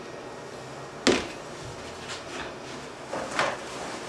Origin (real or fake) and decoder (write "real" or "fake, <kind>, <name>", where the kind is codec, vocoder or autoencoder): real